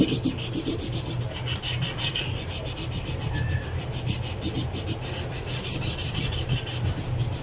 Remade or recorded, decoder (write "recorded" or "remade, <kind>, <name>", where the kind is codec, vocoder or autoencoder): recorded